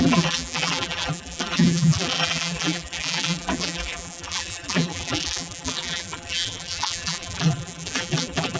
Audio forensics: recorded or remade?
remade